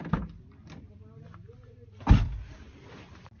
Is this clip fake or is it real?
real